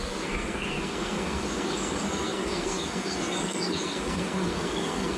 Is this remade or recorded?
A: remade